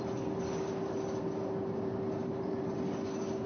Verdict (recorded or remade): recorded